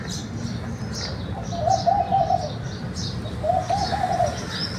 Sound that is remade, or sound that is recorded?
recorded